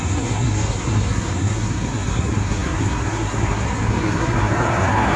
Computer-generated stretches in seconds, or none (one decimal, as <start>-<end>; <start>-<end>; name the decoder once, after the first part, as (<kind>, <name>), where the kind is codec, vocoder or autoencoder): 0.0-5.2 (codec, SNAC)